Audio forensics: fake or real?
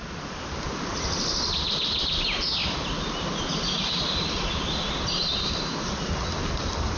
real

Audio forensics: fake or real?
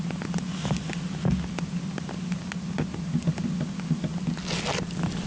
real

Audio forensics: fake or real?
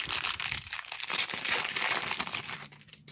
real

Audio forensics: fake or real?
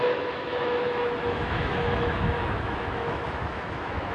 fake